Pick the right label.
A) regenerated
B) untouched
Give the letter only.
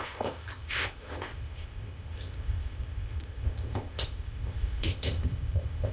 A